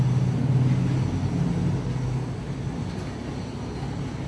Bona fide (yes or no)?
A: yes